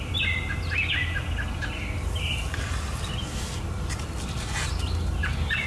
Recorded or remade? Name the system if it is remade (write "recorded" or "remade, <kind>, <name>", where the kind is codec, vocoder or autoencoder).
recorded